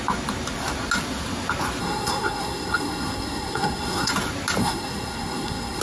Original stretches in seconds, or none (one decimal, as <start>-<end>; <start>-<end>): 0.0-1.8; 4.1-4.6